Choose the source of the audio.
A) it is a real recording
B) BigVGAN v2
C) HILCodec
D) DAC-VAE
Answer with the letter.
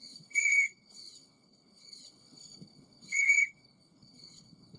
C